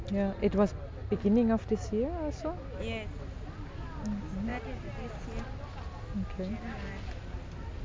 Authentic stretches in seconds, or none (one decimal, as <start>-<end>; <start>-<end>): 0.0-7.8